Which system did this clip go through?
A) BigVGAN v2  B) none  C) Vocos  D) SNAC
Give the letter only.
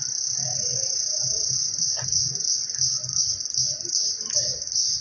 A